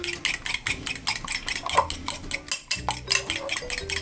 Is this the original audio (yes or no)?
yes